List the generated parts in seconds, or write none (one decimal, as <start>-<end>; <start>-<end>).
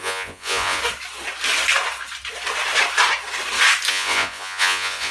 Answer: 0.0-0.8; 3.9-5.1